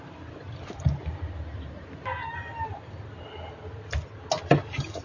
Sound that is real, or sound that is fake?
real